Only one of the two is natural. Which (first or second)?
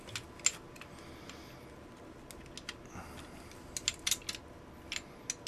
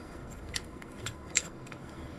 first